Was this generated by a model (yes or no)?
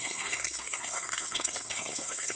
yes